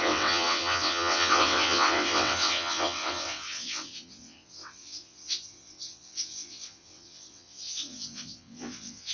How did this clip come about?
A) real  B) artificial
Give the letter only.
B